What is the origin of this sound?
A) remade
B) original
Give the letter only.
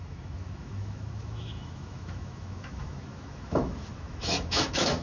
A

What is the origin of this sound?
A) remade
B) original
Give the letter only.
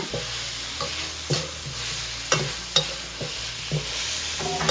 B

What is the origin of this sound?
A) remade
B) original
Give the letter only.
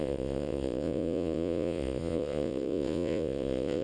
A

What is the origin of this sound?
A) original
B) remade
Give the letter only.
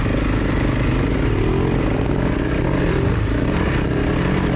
A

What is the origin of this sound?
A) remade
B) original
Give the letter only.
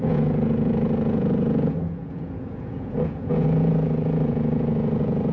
A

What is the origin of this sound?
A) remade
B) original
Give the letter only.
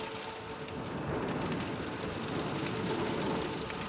B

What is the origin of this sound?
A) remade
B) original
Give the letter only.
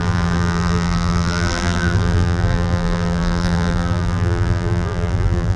A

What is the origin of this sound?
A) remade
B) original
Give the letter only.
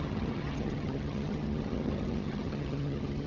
A